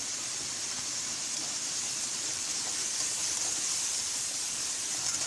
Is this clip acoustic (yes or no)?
no